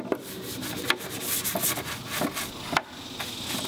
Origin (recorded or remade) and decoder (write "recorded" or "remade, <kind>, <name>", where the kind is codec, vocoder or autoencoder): recorded